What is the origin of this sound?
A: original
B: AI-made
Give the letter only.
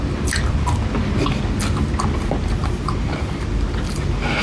A